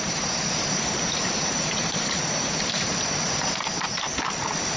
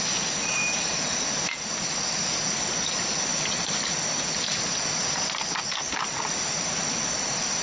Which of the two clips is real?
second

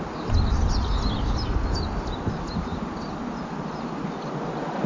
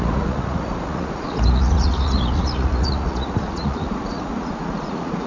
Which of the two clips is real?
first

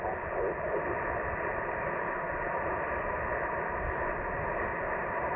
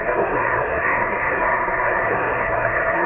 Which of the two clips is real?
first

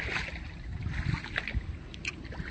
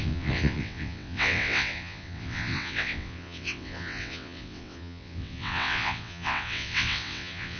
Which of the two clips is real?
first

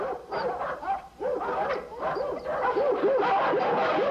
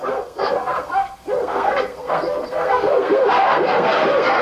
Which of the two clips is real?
first